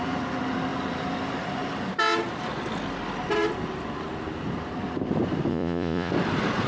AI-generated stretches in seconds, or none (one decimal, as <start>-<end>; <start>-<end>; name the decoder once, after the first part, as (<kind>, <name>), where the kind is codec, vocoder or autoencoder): 5.5-6.1 (vocoder, Vocos)